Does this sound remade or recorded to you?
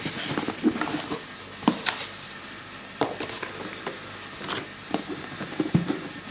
recorded